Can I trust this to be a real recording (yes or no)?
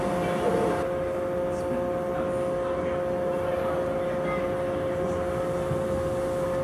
yes